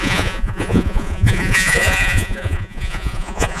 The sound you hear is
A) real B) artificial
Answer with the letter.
B